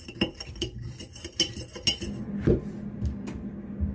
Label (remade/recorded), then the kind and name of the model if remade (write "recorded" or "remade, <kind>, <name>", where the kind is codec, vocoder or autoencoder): recorded